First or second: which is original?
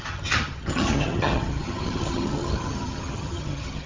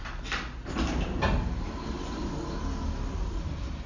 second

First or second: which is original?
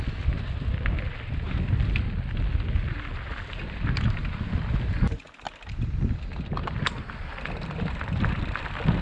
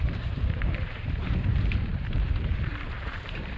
first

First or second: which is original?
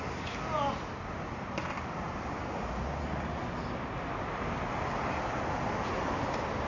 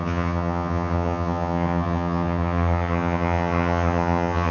first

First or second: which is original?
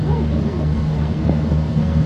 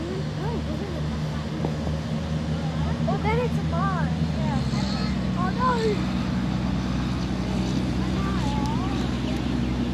second